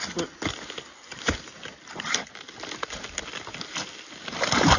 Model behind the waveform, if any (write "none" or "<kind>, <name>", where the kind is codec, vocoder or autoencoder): none